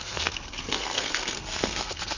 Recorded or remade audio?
remade